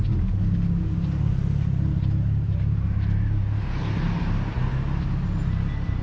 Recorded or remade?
recorded